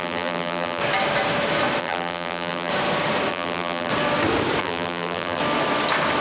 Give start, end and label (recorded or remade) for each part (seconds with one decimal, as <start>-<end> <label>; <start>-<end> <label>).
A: 0.0-0.8 remade; 0.8-1.8 recorded; 1.8-2.7 remade; 2.7-3.3 recorded; 3.3-3.9 remade; 3.9-4.6 recorded; 4.6-5.4 remade; 5.4-6.2 recorded